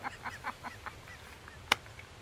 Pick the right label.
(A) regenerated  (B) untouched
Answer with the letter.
B